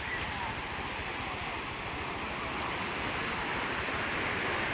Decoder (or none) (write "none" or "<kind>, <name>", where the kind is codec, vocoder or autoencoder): vocoder, BigVGAN v2